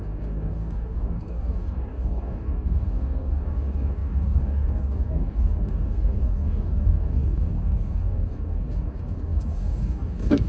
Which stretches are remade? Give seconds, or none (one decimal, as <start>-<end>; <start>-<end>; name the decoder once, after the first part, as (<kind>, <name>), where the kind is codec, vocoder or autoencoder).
0.0-10.5 (codec, DAC)